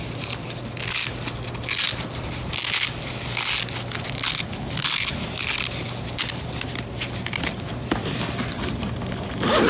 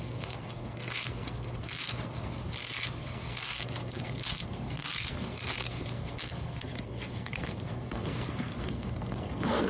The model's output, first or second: second